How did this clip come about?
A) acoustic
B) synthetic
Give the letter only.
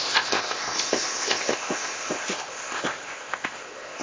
B